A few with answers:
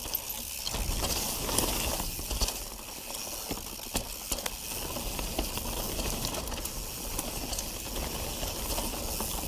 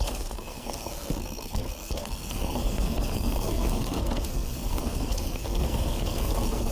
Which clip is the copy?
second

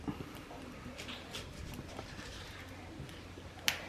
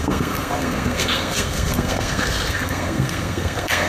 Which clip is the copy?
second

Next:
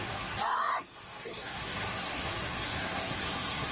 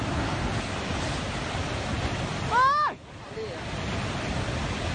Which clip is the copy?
first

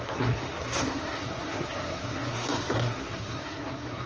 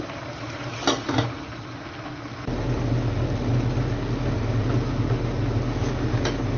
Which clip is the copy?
first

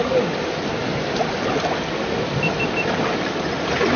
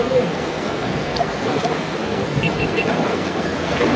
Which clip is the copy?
second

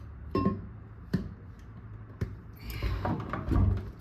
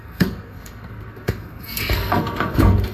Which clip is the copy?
second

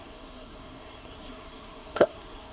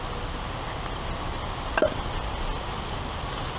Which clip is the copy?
first